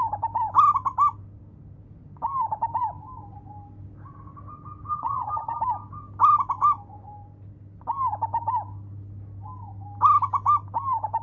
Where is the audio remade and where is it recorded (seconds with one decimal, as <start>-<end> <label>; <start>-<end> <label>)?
0.0-4.9 recorded; 4.9-5.6 remade; 5.6-11.2 recorded